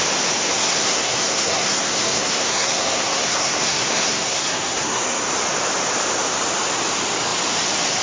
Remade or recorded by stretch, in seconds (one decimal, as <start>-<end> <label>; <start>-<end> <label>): 0.0-0.5 recorded; 0.5-5.2 remade; 5.2-8.0 recorded